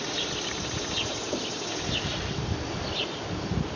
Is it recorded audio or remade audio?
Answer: recorded